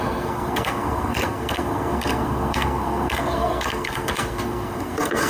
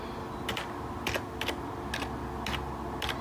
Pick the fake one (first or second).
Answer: first